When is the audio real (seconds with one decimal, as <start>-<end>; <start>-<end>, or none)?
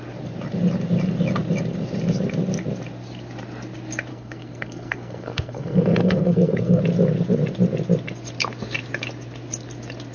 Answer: 0.0-4.1; 6.8-10.1